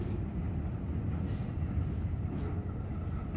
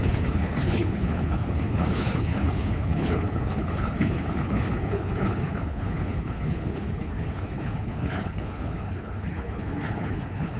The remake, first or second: second